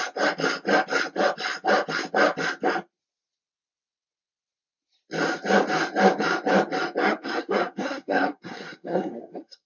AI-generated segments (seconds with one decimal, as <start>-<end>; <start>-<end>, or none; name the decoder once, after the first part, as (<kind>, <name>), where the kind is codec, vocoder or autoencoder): 7.0-9.7 (codec, SNAC)